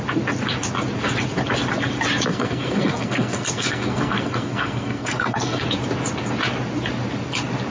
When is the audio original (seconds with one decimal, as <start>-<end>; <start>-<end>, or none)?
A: 0.0-2.3; 5.6-7.7